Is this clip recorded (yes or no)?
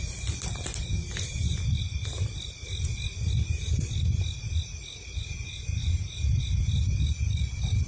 yes